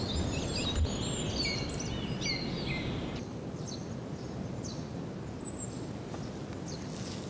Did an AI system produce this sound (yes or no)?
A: no